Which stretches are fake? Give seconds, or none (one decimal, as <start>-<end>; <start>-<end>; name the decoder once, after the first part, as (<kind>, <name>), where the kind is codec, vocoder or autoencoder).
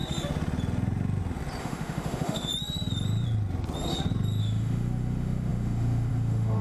1.6-2.5 (autoencoder, DAC-VAE); 4.4-6.6